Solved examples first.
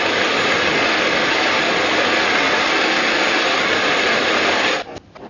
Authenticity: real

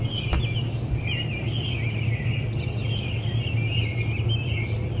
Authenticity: real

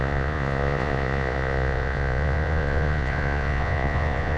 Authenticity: fake